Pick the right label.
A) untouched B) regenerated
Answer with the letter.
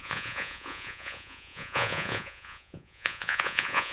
B